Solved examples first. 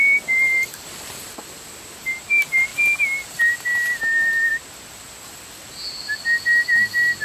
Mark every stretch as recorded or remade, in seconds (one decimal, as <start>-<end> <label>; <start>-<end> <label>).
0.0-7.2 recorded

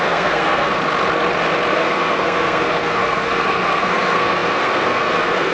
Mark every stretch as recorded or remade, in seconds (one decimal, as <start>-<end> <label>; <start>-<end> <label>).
0.0-0.8 remade; 0.8-1.7 recorded; 1.7-5.5 remade

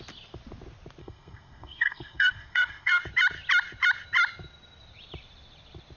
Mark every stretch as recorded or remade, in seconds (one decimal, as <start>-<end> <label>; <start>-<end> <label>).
0.0-1.0 recorded; 1.0-3.0 remade; 3.0-6.0 recorded

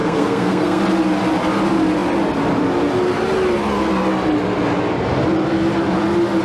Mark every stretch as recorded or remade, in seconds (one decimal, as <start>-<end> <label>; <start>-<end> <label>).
0.0-0.8 remade; 0.8-6.4 recorded

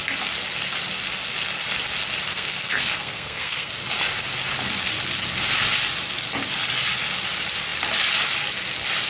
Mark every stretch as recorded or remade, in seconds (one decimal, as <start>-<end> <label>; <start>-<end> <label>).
0.0-2.3 recorded; 2.3-3.7 remade; 3.7-9.1 recorded

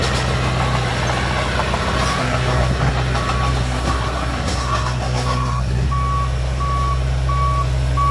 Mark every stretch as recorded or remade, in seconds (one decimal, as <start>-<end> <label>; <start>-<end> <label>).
0.0-2.1 recorded; 2.1-2.9 remade; 2.9-3.6 recorded; 3.6-5.9 remade; 5.9-8.1 recorded

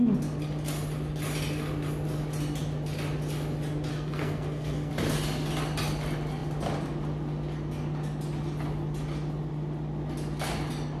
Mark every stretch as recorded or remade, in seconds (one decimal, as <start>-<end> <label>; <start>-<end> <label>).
0.0-3.9 recorded; 3.9-4.9 remade; 4.9-11.0 recorded

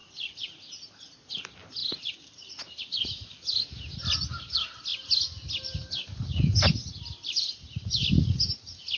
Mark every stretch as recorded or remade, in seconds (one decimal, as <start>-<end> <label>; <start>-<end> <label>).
0.0-9.0 recorded